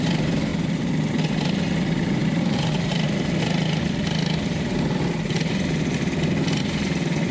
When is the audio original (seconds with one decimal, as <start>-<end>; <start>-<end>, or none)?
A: 0.0-2.2; 6.6-7.3